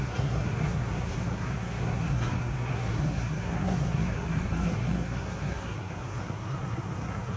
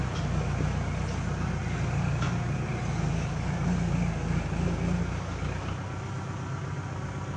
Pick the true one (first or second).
second